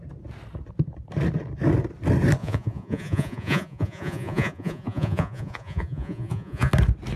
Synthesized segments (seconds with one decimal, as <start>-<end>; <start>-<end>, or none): 2.4-6.7

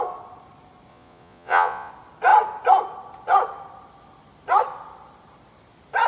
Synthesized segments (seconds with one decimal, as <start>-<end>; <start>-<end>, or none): 0.9-1.9

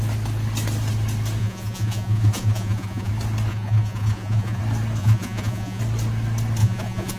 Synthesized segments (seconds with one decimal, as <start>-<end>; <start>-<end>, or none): 1.4-3.1; 3.5-4.6; 5.0-5.8; 6.6-7.2

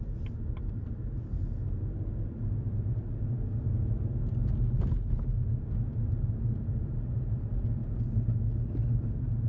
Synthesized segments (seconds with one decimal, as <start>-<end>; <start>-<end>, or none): none